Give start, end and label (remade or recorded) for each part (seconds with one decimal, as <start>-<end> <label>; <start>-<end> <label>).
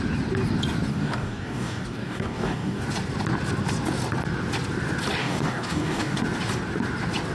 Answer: 0.0-0.9 recorded; 0.9-2.8 remade; 2.8-5.2 recorded; 5.2-6.2 remade; 6.2-7.3 recorded